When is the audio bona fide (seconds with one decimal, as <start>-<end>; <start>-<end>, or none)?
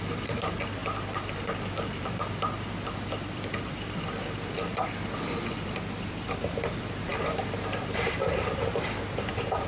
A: 0.8-2.0